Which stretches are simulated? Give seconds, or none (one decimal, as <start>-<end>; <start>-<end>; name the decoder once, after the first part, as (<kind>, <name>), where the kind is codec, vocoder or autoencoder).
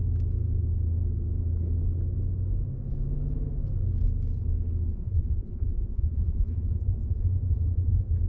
4.9-8.3 (vocoder, Vocos)